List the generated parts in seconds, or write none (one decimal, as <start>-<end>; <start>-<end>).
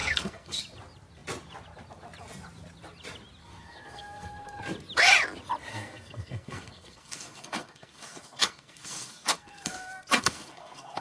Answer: 0.0-0.6; 3.4-4.6; 5.7-11.0